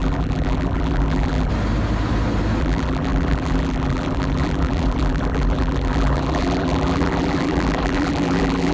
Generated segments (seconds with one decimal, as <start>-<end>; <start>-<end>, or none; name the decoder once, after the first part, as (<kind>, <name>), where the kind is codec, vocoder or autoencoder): 0.0-1.5 (vocoder, BigVGAN v2); 2.6-8.7